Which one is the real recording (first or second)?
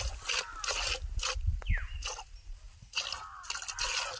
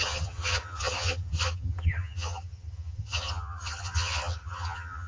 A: first